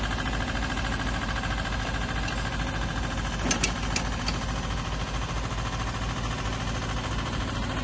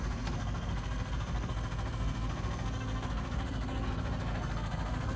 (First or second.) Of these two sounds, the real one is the first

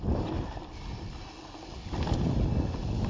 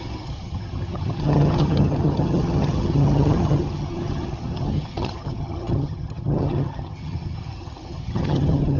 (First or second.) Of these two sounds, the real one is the first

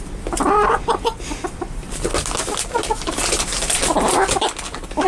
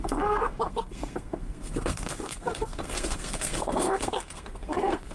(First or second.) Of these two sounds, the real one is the first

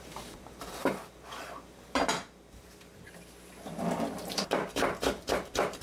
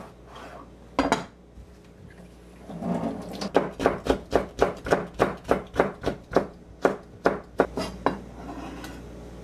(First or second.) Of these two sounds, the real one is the second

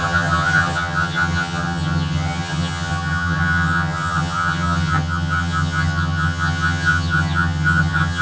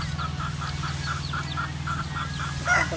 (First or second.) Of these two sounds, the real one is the second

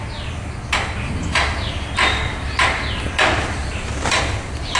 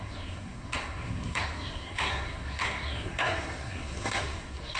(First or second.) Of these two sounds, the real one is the first